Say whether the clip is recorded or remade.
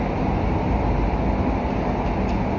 recorded